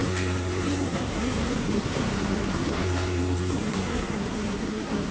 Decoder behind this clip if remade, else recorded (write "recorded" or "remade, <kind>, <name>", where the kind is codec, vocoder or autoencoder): remade, codec, SNAC